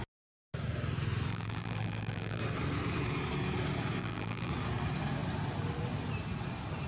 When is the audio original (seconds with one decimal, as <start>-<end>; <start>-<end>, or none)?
0.0-1.3; 2.4-4.0; 4.5-6.9